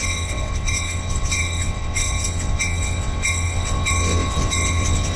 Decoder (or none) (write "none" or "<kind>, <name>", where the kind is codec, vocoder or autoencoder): vocoder, WaveNeXt